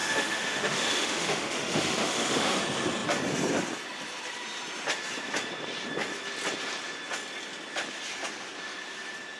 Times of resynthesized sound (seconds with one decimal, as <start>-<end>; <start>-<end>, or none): 0.0-2.6